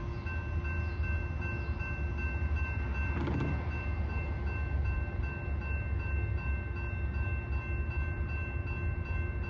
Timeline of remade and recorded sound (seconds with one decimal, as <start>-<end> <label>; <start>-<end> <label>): 0.0-9.5 recorded